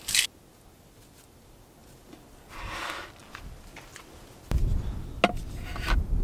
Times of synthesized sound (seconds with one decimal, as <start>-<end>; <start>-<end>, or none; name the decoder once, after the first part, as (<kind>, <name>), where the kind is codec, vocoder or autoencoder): 3.2-5.2 (vocoder, BigVGAN v2)

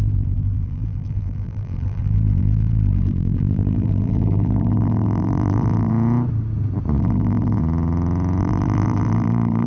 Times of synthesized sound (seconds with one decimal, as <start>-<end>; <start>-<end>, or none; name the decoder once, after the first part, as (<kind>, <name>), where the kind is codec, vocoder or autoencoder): 0.0-5.9 (vocoder, BigVGAN v2); 7.0-7.6; 8.4-9.7

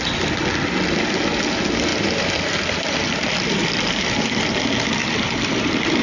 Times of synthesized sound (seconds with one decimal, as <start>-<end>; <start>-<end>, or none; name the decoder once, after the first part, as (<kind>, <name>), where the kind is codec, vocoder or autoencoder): 1.9-3.9 (vocoder, BigVGAN v2); 5.0-6.0